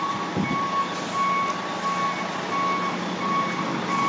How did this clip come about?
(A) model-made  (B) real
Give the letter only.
B